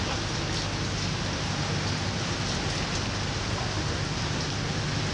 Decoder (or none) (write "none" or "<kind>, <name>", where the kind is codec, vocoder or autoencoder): none